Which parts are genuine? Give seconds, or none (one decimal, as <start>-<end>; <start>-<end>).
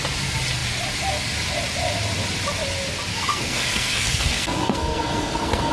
0.0-3.1